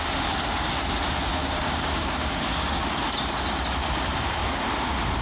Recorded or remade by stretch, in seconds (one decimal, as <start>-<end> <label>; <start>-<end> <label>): 0.0-1.4 recorded; 1.4-2.8 remade; 2.8-5.2 recorded